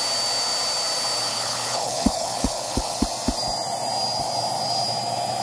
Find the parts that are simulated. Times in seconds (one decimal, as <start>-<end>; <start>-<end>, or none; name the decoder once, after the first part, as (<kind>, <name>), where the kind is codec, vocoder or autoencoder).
1.3-3.0 (codec, HILCodec)